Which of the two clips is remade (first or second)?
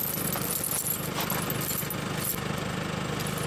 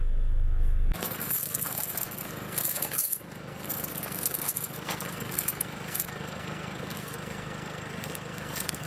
second